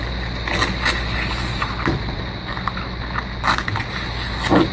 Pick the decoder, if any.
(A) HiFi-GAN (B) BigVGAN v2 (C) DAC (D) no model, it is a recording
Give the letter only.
D